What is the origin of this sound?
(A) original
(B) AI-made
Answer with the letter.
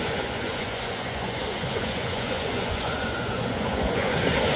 B